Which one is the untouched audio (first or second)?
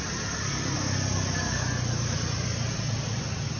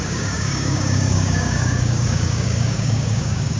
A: first